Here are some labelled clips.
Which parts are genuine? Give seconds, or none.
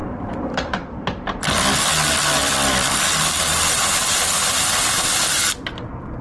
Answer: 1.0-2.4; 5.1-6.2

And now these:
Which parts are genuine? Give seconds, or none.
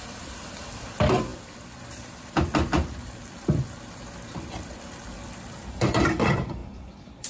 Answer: none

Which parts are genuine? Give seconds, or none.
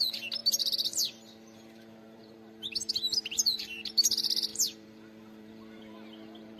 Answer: none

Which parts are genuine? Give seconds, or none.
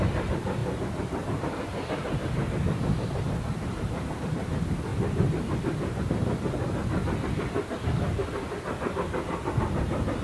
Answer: 0.0-0.6; 4.2-10.2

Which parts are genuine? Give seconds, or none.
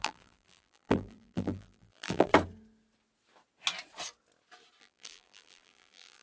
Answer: 2.3-4.8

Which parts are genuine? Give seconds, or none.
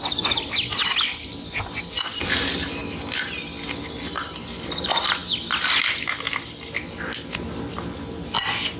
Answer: 2.8-4.4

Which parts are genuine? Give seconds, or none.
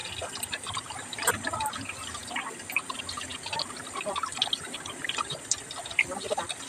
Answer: 0.0-6.7